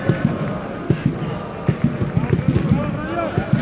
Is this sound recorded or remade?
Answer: recorded